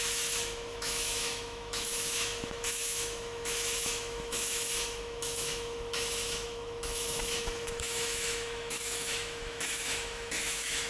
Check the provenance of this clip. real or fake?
fake